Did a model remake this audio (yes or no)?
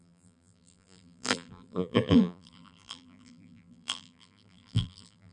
yes